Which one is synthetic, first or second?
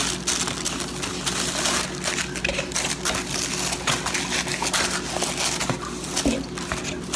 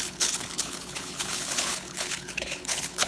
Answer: second